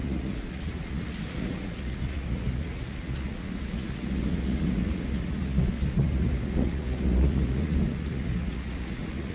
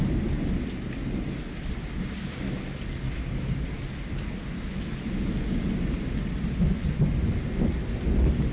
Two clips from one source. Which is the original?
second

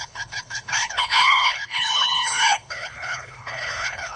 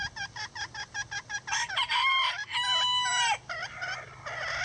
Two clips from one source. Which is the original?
second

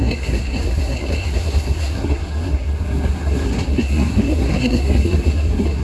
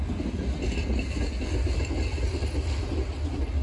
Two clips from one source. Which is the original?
second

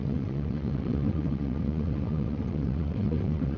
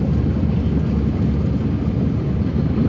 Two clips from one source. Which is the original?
second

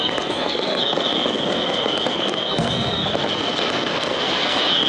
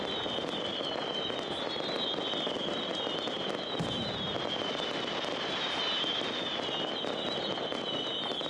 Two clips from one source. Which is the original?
second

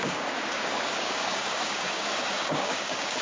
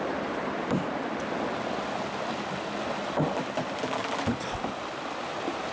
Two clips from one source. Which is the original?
second